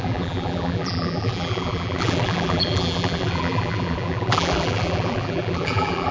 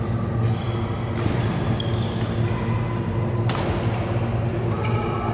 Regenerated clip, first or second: first